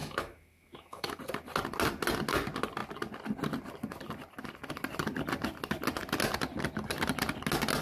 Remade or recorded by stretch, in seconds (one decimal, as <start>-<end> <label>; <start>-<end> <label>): 0.0-1.2 remade; 1.2-7.8 recorded